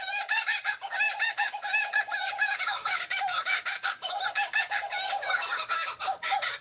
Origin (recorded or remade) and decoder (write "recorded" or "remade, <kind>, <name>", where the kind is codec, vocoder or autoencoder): remade, codec, DAC